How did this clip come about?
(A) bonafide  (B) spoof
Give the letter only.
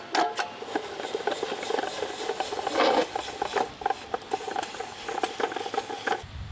A